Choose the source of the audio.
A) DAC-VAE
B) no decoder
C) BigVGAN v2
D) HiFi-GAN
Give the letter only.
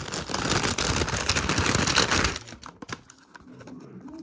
B